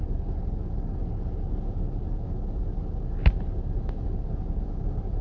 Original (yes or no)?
yes